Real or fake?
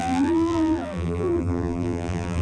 fake